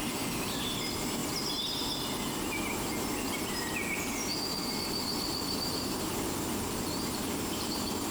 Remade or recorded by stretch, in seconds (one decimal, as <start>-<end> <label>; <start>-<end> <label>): 0.0-1.2 remade; 1.2-4.4 recorded; 4.4-8.1 remade